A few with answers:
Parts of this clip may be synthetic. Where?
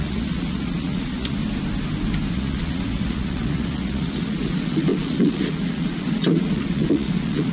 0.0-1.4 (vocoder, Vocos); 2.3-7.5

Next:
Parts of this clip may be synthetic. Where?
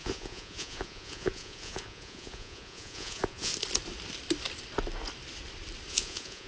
0.0-3.5 (vocoder, Vocos); 5.9-6.5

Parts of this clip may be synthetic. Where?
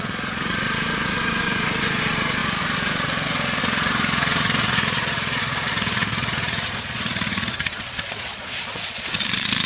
0.0-9.7 (vocoder, Vocos)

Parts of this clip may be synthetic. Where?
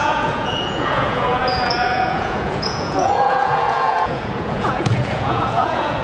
0.0-6.0 (vocoder, Vocos)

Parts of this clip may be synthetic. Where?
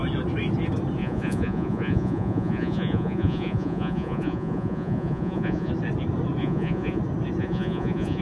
1.0-5.7 (vocoder, Vocos); 6.4-7.0; 7.4-8.2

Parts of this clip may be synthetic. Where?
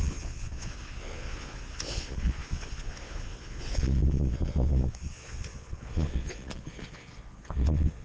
0.0-8.0 (vocoder, Vocos)